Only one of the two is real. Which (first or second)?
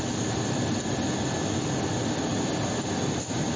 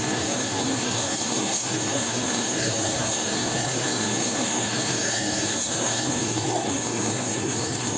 first